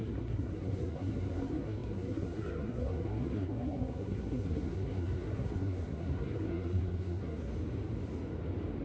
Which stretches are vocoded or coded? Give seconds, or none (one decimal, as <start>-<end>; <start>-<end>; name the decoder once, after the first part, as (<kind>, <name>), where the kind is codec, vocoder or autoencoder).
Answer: 0.0-7.5 (codec, SNAC)